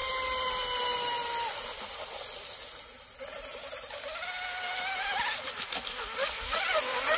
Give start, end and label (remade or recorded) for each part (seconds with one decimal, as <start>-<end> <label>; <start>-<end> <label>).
0.0-7.2 recorded